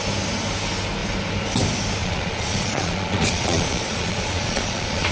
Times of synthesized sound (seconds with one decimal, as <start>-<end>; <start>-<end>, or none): 2.0-5.1